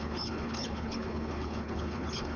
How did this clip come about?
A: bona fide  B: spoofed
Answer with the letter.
B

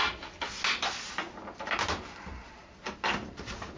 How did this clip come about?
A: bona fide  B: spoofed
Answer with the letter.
A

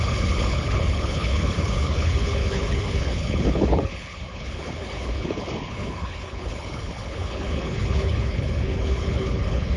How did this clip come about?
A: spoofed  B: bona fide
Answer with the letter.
A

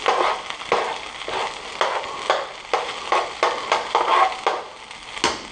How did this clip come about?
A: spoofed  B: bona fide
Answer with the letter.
B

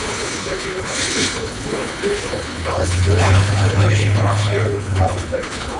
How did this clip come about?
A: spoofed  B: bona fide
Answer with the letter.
A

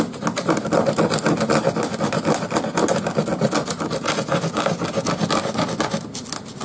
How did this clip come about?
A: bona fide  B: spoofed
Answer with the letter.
A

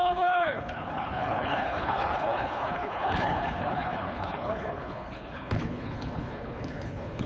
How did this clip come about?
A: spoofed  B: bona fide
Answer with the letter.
A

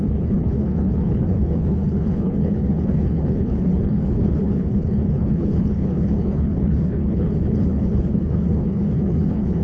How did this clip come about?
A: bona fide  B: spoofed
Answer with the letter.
B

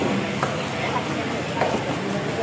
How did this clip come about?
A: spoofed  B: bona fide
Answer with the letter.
B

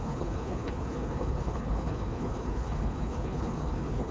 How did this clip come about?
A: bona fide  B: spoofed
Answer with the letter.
B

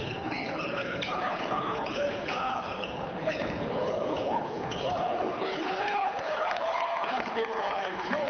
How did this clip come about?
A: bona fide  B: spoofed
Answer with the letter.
B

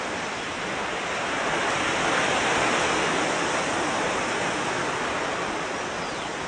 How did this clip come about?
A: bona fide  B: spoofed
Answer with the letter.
A